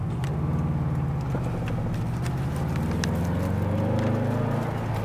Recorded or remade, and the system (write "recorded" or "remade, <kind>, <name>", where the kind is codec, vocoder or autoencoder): recorded